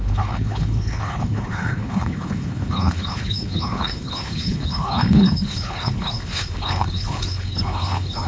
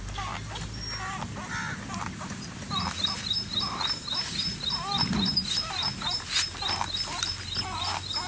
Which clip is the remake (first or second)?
first